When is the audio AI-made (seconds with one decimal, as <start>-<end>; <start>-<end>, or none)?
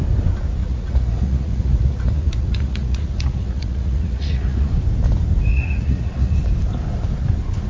0.6-4.7; 5.5-6.3